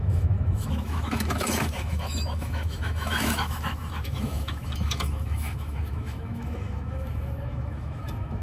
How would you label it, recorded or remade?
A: remade